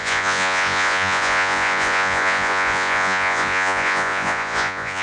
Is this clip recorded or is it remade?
remade